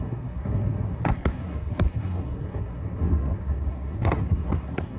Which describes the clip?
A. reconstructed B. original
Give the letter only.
A